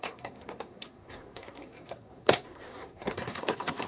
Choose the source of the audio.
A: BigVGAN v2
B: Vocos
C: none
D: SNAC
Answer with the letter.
D